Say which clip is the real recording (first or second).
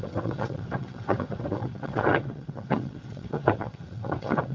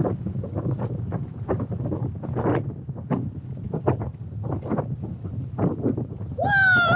second